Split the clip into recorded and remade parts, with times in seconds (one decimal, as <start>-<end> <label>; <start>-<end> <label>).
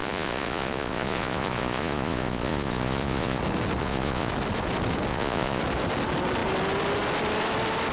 0.0-3.4 remade; 3.4-3.8 recorded; 3.8-4.3 remade; 4.3-5.1 recorded; 5.1-5.6 remade; 5.6-7.9 recorded